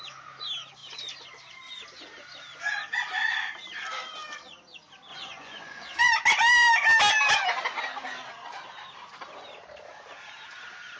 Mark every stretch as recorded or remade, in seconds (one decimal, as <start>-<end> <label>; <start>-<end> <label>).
0.0-5.1 recorded; 5.1-6.0 remade; 6.0-11.0 recorded